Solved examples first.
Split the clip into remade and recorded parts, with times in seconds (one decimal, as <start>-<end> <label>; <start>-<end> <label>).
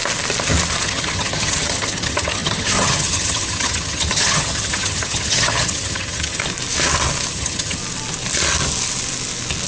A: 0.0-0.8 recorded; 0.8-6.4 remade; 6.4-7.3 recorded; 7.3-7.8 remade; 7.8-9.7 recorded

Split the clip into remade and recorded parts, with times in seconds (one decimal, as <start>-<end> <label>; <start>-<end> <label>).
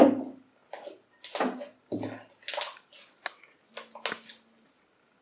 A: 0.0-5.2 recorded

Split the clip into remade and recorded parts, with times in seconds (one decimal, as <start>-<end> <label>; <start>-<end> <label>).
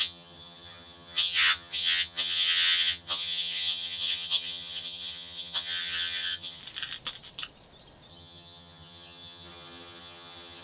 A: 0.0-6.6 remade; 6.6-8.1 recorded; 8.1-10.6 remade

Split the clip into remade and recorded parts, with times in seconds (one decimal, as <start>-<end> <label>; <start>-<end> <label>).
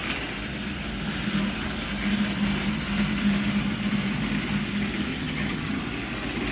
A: 0.0-5.1 recorded; 5.1-5.8 remade; 5.8-6.5 recorded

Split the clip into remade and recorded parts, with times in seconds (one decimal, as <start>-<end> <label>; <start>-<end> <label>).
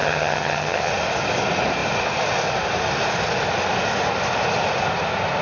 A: 0.0-0.9 remade; 0.9-5.4 recorded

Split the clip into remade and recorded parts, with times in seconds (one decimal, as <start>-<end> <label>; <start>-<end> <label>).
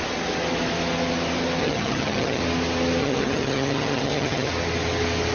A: 0.0-1.6 recorded; 1.6-2.4 remade; 2.4-3.0 recorded; 3.0-4.5 remade; 4.5-5.3 recorded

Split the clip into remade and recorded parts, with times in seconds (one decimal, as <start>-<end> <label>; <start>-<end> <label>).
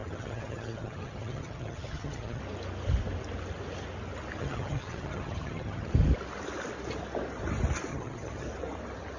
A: 0.0-2.4 remade; 2.4-4.4 recorded; 4.4-5.9 remade; 5.9-7.9 recorded; 7.9-8.4 remade; 8.4-9.2 recorded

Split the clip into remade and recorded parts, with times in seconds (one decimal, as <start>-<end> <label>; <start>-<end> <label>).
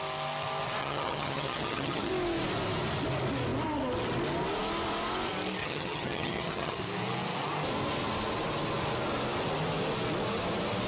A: 0.0-0.8 recorded; 0.8-2.1 remade; 2.1-5.6 recorded; 5.6-6.8 remade; 6.8-10.9 recorded